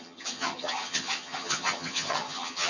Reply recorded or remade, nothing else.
remade